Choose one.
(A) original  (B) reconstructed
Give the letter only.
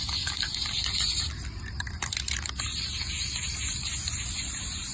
A